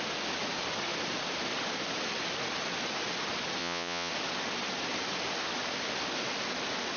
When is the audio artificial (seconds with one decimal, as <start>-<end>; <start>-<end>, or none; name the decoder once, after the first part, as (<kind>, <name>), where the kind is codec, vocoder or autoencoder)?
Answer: 3.6-4.1 (vocoder, Vocos)